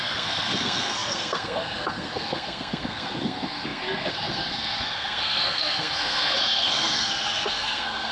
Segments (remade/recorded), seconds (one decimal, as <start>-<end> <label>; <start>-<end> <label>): 0.0-8.1 remade